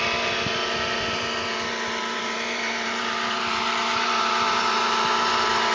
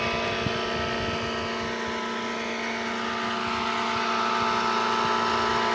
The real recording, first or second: second